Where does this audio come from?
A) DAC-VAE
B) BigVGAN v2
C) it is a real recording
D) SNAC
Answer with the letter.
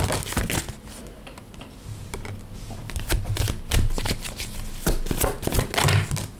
C